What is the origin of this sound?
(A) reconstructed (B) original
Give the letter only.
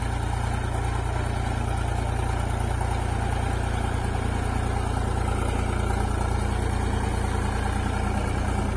B